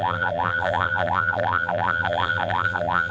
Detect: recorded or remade remade